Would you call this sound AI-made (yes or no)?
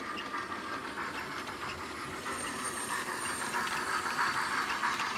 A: no